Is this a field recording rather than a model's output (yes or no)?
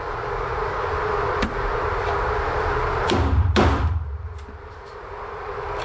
no